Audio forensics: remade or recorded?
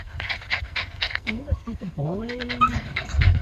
remade